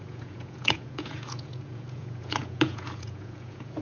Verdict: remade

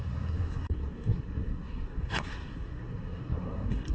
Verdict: remade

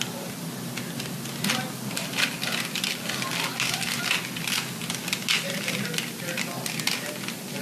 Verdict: recorded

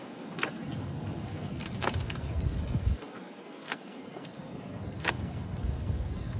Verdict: remade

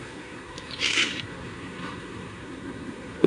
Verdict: remade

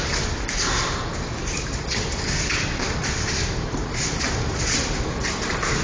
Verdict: recorded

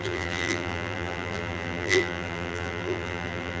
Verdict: remade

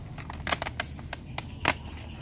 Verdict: recorded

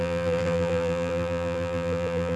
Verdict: remade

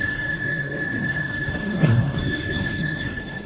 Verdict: remade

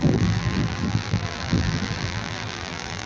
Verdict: remade